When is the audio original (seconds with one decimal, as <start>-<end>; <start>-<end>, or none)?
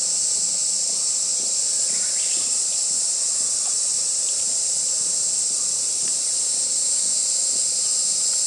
0.0-8.5